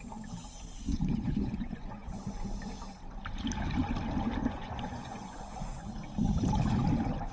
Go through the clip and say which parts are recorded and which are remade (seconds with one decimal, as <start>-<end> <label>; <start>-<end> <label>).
0.0-0.8 recorded; 0.8-2.2 remade; 2.2-4.4 recorded; 4.4-5.9 remade; 5.9-7.3 recorded